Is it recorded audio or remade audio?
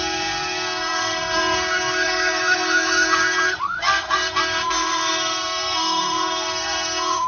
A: remade